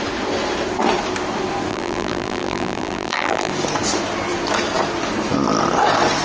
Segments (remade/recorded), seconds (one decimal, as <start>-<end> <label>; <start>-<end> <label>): 0.0-1.7 recorded; 1.7-3.5 remade; 3.5-6.2 recorded